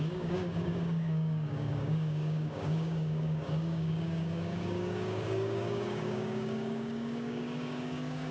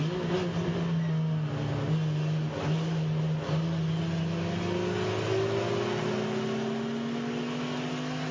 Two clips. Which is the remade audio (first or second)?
first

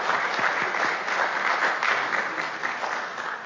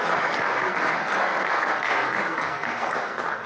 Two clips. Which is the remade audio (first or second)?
second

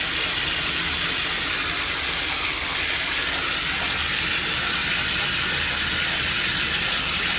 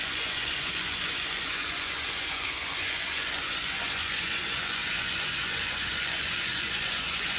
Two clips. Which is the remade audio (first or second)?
second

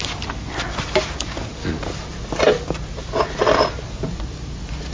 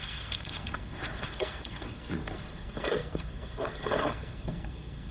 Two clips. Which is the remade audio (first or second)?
second